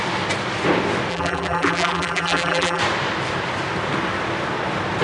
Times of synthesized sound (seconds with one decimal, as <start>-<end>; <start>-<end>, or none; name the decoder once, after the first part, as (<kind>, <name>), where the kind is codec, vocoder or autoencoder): 1.1-2.8 (vocoder, BigVGAN v2)